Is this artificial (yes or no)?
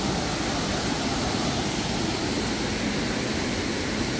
no